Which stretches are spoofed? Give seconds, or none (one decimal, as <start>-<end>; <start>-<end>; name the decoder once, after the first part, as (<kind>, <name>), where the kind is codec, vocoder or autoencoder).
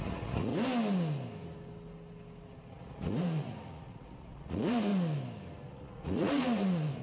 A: 0.0-0.5 (vocoder, Vocos); 2.7-4.9; 5.7-7.0